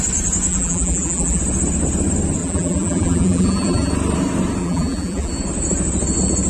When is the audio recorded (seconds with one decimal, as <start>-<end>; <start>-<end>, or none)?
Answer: 0.0-0.5; 1.4-2.4; 3.9-4.6; 5.3-6.5